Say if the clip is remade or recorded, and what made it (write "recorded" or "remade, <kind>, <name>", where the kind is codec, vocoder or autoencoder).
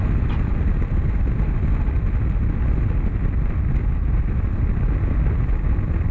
recorded